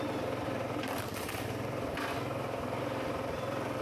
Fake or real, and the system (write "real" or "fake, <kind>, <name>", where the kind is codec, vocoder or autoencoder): fake, vocoder, BigVGAN v2